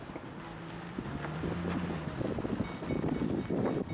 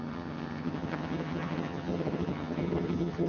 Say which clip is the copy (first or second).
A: second